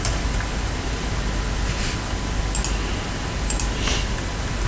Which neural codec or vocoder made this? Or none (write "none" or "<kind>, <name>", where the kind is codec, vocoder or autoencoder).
none